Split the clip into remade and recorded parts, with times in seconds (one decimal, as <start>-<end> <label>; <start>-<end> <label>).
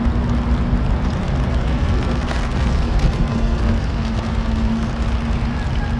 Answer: 0.0-1.5 recorded; 1.5-4.9 remade; 4.9-6.0 recorded